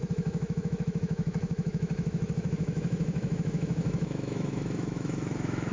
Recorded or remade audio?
remade